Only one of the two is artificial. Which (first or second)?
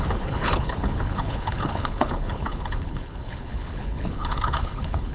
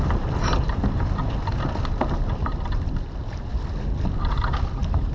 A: first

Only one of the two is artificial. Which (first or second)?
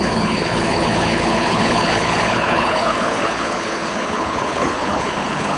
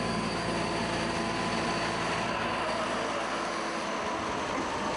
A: first